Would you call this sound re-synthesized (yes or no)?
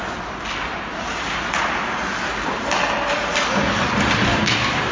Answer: no